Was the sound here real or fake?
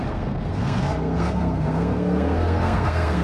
fake